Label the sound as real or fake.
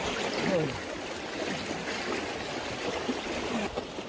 real